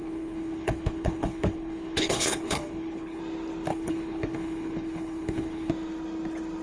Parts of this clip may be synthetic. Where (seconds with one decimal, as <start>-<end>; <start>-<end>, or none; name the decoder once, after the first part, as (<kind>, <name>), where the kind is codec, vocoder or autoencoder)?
0.0-3.2 (codec, HILCodec); 3.7-5.7